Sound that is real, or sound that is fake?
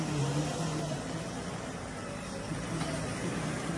real